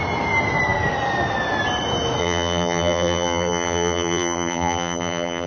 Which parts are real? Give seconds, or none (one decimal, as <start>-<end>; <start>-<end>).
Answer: 0.0-2.2